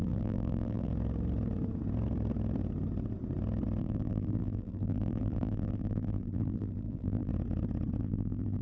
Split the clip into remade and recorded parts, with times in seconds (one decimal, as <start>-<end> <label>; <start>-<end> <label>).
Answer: 0.0-0.9 remade; 0.9-3.8 recorded; 3.8-7.3 remade; 7.3-8.0 recorded; 8.0-8.6 remade